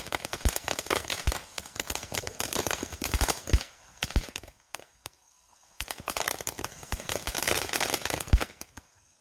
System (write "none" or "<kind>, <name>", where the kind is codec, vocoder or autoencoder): codec, SNAC